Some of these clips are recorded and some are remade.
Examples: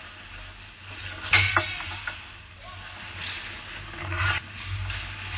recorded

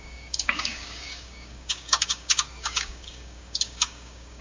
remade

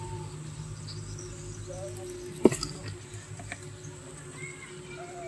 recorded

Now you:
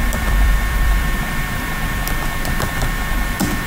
remade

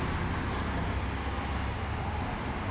recorded